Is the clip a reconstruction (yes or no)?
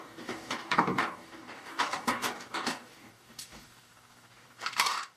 yes